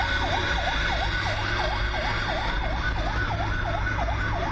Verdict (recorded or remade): recorded